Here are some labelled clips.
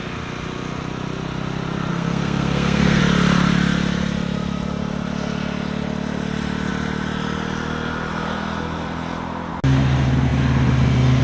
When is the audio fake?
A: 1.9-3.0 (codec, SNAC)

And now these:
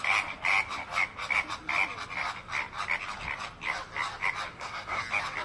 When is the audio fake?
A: 4.5-5.0 (codec, SNAC)

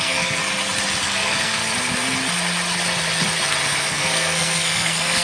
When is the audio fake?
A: 0.0-0.4 (codec, SNAC); 1.0-1.6; 3.9-5.2

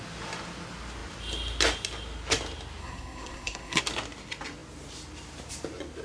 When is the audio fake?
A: 2.8-3.8 (codec, SNAC)

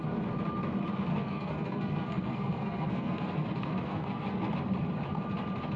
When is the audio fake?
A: 1.1-4.5 (codec, SNAC)

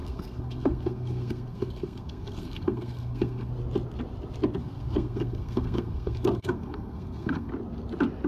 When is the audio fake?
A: 0.0-3.5 (codec, SNAC); 4.6-7.5

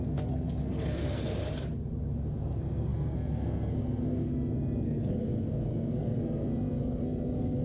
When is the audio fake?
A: 0.0-1.4 (codec, SNAC); 2.3-7.6

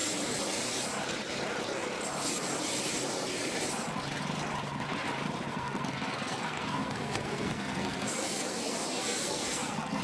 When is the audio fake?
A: 5.5-10.0 (codec, SNAC)